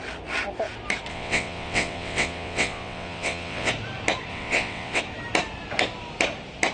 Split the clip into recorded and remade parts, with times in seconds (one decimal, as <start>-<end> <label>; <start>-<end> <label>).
0.0-1.1 recorded; 1.1-3.7 remade; 3.7-4.3 recorded; 4.3-5.0 remade; 5.0-6.7 recorded